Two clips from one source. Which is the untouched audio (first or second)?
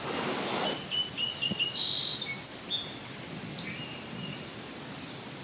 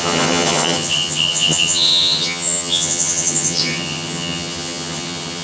first